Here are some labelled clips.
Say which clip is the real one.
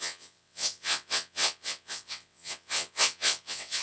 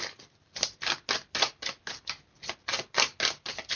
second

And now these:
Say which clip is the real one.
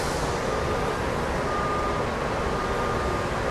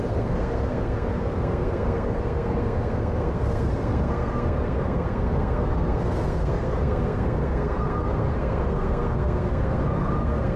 first